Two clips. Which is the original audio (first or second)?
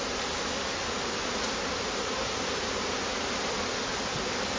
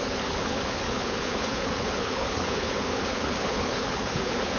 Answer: first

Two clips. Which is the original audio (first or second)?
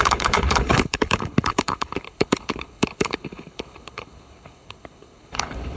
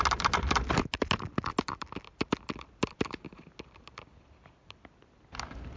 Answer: second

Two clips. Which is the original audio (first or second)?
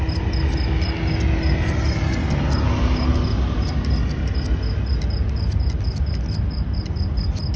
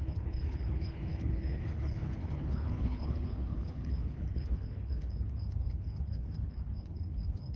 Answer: first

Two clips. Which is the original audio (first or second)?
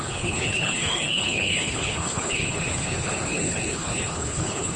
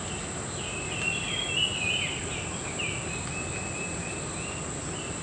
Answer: second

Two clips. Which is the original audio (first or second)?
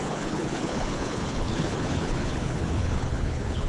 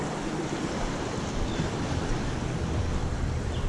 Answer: second